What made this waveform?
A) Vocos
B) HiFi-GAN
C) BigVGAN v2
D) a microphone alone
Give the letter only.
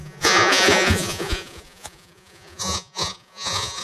A